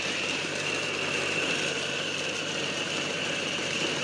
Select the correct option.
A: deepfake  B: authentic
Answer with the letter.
A